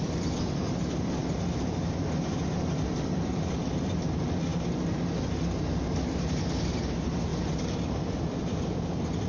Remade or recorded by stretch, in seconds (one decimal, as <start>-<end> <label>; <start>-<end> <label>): 0.0-4.5 remade; 4.5-5.2 recorded; 5.2-9.3 remade